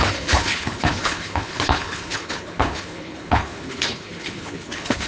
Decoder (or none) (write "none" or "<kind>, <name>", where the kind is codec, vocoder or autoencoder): codec, HILCodec